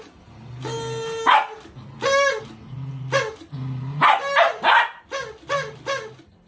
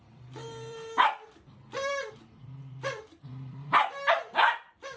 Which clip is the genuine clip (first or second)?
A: first